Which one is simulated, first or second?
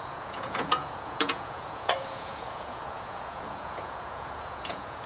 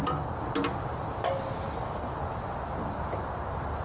first